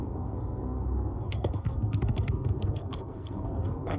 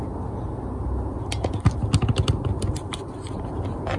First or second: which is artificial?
first